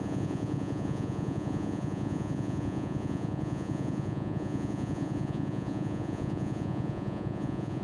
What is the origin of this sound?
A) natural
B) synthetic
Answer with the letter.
B